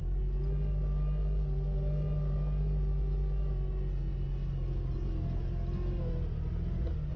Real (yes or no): yes